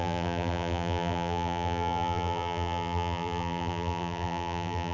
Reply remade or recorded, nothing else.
remade